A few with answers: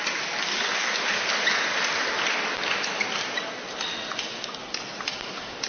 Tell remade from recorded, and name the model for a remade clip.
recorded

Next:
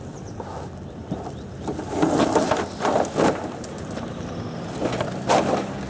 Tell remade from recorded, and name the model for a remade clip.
recorded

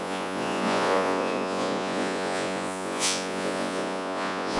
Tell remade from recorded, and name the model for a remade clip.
remade, vocoder, Vocos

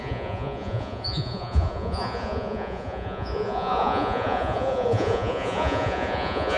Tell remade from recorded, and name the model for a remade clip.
remade, vocoder, Vocos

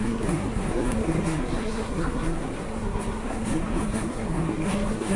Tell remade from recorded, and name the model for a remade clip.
remade, codec, SNAC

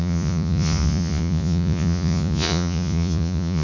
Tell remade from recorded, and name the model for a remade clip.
remade, vocoder, Vocos